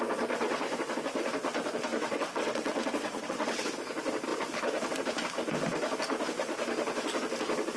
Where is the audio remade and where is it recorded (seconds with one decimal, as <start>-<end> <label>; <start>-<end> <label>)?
0.0-1.9 recorded; 1.9-3.7 remade; 3.7-7.8 recorded